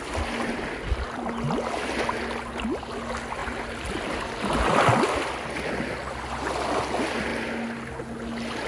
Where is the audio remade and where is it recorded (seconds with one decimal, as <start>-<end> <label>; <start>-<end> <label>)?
0.0-8.7 recorded